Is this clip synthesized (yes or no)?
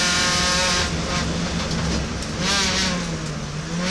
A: no